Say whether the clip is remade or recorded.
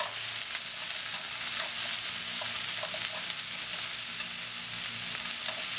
recorded